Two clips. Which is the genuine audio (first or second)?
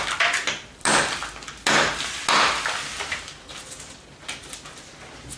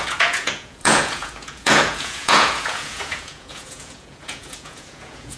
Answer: first